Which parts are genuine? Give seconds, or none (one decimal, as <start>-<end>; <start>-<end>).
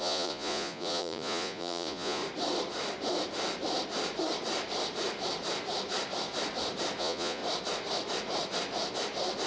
2.2-7.0; 7.4-9.5